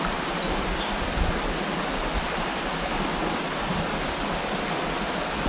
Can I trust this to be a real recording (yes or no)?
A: yes